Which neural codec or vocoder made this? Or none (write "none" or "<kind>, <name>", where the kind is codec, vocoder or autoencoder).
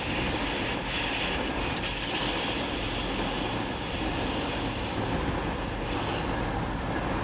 none